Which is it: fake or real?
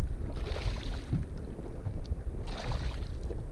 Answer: real